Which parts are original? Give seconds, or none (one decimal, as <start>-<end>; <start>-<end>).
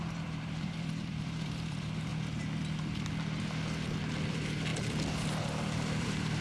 2.1-4.3; 4.7-6.0